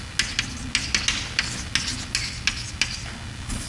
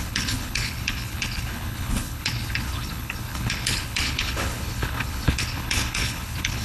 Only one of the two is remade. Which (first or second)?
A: second